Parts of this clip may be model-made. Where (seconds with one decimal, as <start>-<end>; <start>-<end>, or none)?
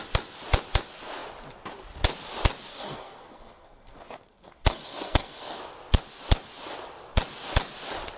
2.7-5.6